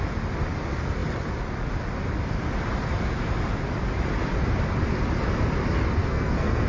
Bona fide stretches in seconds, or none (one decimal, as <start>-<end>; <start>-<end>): 0.0-6.0